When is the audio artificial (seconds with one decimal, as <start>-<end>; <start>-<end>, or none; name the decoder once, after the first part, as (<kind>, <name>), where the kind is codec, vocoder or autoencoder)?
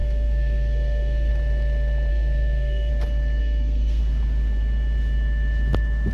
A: 0.0-1.3 (codec, SNAC); 2.1-2.9; 3.4-4.0